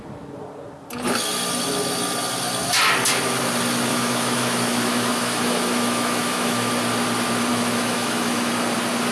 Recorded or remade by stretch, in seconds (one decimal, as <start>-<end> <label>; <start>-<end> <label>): 0.0-3.9 recorded; 3.9-6.7 remade; 6.7-7.5 recorded; 7.5-8.5 remade; 8.5-9.1 recorded